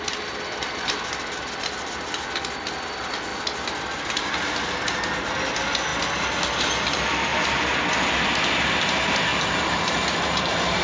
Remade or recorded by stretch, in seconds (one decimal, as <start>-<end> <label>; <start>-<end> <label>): 0.0-7.3 recorded; 7.3-8.8 remade; 8.8-9.3 recorded; 9.3-10.8 remade